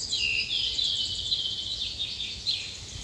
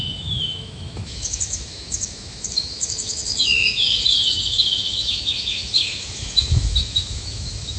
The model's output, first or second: second